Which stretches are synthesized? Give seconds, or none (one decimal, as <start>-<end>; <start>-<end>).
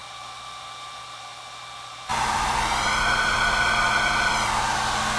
2.1-4.6